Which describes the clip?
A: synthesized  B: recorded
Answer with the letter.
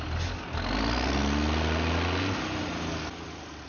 B